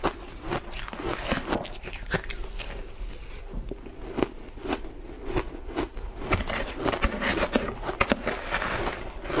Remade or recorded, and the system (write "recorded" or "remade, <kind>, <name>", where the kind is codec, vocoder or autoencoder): recorded